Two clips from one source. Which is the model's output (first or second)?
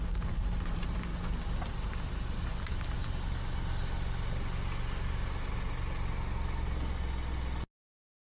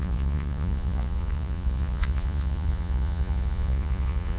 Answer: second